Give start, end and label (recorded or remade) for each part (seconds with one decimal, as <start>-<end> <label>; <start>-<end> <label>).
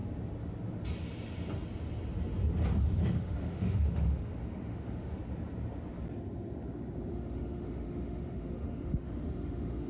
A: 0.0-2.8 recorded; 2.8-5.2 remade; 5.2-7.1 recorded; 7.1-9.9 remade